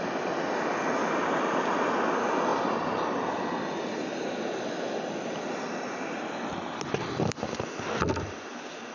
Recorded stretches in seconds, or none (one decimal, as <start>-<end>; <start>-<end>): 0.0-1.0; 1.9-8.9